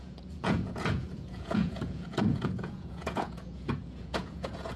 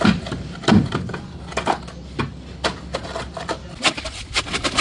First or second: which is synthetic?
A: first